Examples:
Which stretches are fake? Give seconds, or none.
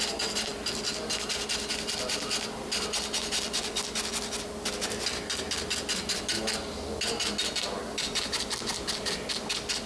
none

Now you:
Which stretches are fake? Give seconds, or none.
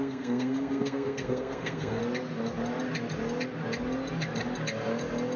0.0-2.0 (codec, SNAC)